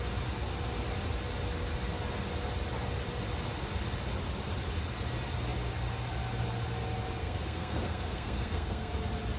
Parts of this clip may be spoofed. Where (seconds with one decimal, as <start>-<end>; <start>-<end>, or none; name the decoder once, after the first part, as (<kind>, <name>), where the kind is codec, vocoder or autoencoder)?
7.2-8.9 (codec, SNAC)